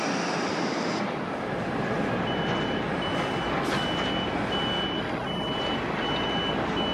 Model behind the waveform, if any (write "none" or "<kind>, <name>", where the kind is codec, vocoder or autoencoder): none